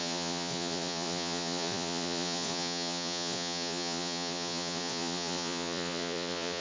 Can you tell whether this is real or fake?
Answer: fake